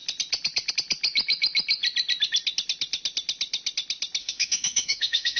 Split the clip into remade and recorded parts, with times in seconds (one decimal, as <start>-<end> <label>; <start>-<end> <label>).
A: 0.0-4.2 recorded; 4.2-5.4 remade